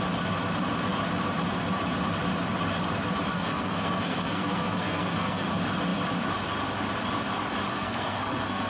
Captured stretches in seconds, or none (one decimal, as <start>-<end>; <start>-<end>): 0.0-3.3; 5.5-7.7